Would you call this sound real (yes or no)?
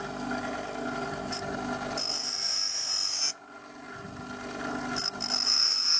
yes